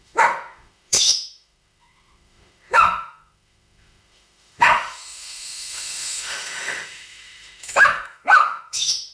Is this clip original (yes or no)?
no